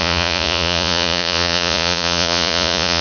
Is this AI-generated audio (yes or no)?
yes